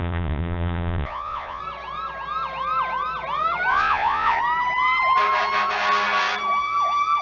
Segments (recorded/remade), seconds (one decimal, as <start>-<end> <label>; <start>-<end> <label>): 0.0-1.6 remade; 1.6-3.7 recorded; 3.7-4.4 remade; 4.4-7.2 recorded